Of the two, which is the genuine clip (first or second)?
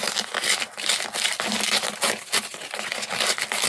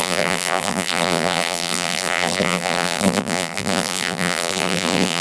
first